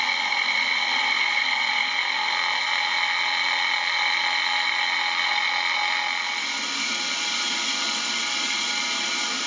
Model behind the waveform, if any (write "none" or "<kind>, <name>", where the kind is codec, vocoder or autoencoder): none